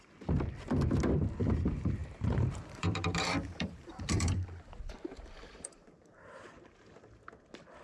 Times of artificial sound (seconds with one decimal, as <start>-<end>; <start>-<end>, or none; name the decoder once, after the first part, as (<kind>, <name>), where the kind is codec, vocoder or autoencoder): 2.0-6.5 (vocoder, BigVGAN v2)